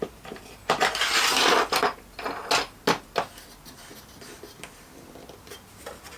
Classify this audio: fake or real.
real